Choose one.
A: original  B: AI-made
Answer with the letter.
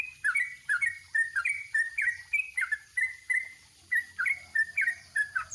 B